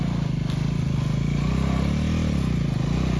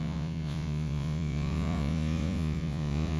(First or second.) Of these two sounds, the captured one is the first